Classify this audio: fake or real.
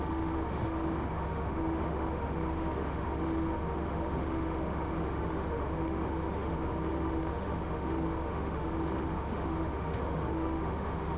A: fake